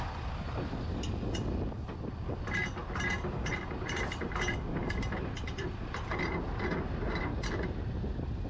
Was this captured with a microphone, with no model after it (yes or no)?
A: yes